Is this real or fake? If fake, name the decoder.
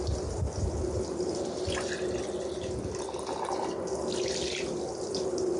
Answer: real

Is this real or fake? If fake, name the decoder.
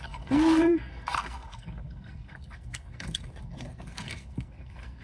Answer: fake, codec, SNAC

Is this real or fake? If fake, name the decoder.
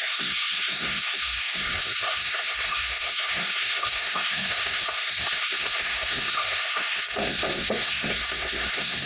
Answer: fake, codec, SNAC